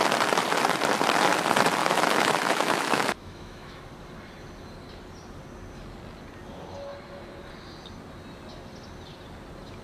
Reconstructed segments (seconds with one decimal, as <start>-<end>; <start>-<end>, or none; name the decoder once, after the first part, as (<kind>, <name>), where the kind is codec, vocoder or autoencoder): 1.8-3.8 (autoencoder, DAC-VAE)